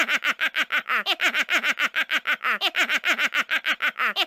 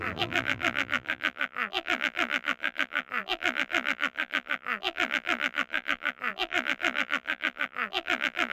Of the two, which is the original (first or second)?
first